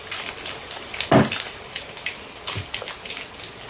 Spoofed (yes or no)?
no